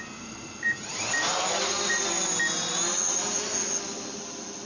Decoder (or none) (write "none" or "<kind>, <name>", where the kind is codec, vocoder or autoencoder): none